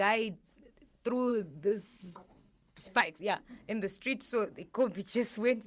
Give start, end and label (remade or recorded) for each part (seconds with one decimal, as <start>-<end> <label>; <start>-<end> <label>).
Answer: 0.0-1.3 recorded; 1.3-3.2 remade; 3.2-5.7 recorded